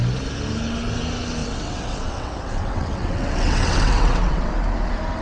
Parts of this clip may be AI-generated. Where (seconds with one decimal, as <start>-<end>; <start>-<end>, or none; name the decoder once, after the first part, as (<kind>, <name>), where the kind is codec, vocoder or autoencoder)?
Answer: 1.4-4.5 (vocoder, WaveNeXt)